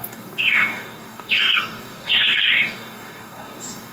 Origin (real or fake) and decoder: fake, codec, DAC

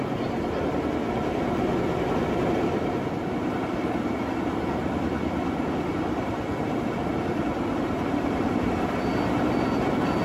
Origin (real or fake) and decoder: real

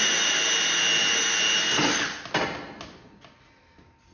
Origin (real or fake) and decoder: real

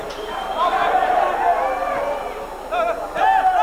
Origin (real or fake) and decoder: real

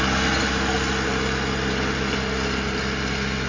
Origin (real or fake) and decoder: real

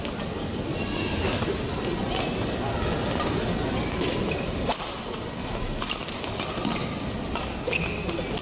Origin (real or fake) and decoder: real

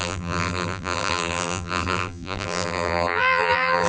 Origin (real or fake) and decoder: fake, vocoder, BigVGAN v2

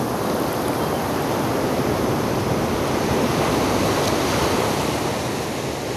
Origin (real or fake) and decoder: real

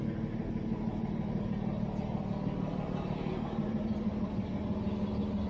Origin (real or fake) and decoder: real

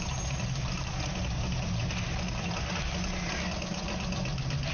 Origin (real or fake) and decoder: real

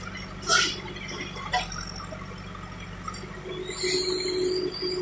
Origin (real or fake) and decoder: real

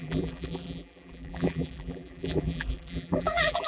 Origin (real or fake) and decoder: fake, vocoder, BigVGAN v2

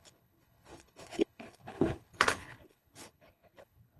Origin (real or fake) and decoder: fake, codec, HILCodec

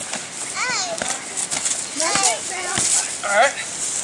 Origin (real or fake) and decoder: real